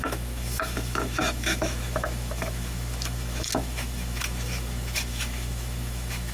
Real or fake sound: fake